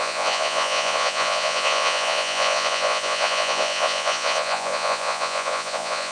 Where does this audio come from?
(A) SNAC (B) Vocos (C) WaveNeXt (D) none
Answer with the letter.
B